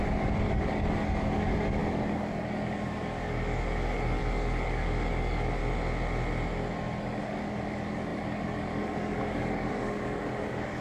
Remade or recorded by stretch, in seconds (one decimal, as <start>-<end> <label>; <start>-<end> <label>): 0.0-5.6 remade; 5.6-7.0 recorded; 7.0-10.8 remade